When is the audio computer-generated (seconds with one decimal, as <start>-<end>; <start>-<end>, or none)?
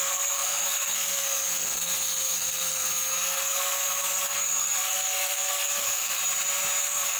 0.0-6.2; 6.8-7.2